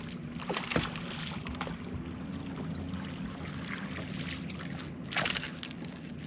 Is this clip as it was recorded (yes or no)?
yes